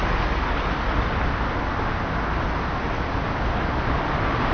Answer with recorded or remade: recorded